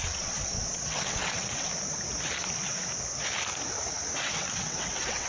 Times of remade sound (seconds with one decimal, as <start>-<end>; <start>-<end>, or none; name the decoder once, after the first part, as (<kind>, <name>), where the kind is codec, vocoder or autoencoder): 0.0-1.7 (vocoder, WaveNeXt); 3.9-5.3